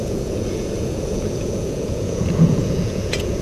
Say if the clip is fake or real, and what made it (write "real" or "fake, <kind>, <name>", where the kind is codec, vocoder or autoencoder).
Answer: fake, vocoder, Vocos